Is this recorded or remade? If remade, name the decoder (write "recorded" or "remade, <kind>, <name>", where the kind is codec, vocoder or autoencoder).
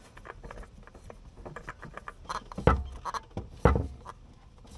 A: recorded